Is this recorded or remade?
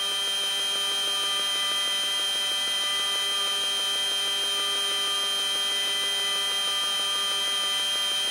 recorded